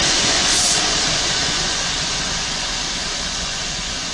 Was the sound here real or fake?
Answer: fake